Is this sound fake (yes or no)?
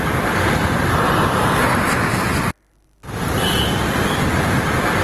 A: no